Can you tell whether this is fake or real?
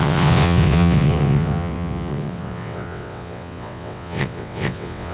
fake